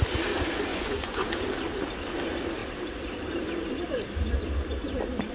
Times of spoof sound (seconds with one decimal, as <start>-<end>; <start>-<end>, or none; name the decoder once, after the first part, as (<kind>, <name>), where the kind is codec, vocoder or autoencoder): 0.7-1.3 (vocoder, Vocos)